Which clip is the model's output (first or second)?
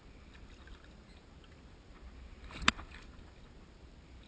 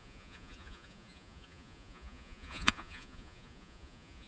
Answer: second